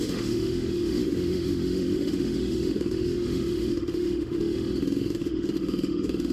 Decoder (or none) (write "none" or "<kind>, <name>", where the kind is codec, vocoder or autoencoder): autoencoder, DAC-VAE